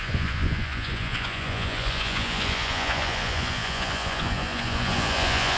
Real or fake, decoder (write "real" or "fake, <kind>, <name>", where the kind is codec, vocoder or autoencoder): fake, vocoder, Vocos